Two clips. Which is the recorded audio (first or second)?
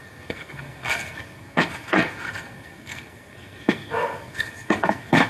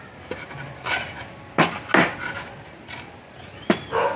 second